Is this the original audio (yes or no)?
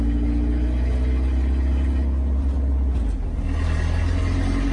yes